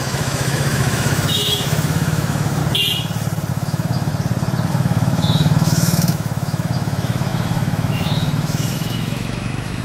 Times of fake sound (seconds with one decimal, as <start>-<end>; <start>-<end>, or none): 0.0-2.6; 3.5-4.1; 4.7-9.8